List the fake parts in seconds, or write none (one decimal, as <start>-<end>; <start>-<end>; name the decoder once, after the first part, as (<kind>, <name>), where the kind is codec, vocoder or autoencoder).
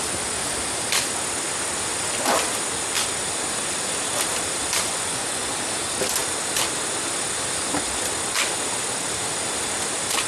4.9-5.5 (vocoder, Vocos)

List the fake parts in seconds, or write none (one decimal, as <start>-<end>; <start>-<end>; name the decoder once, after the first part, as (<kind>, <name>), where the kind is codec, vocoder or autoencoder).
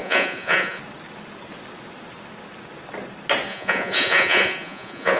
0.0-0.8 (vocoder, Vocos); 3.5-5.2